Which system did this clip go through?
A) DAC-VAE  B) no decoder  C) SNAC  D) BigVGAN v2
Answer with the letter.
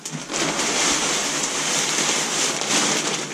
B